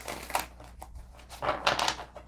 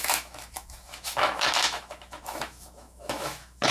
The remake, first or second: second